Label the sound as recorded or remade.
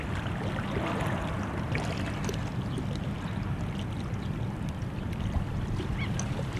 recorded